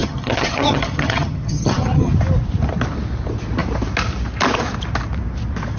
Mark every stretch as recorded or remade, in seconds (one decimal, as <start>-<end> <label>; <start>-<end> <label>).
0.0-2.1 remade; 2.1-5.8 recorded